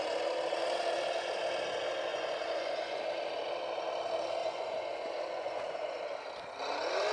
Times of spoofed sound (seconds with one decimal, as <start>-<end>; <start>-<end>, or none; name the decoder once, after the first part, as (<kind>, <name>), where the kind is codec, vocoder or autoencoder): 2.1-3.0 (vocoder, Vocos); 4.4-6.0